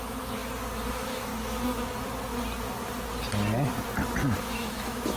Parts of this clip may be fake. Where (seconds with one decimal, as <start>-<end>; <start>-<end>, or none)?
0.0-0.4; 0.9-1.3; 4.4-5.2